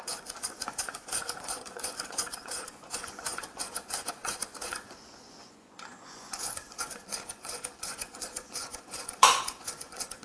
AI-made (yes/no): yes